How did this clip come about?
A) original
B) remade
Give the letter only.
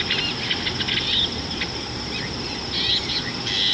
A